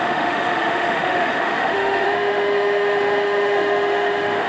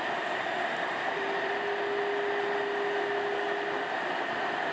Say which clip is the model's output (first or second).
first